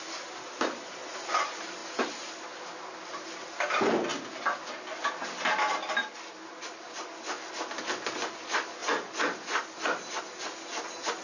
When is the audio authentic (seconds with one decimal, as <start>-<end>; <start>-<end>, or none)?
0.0-11.2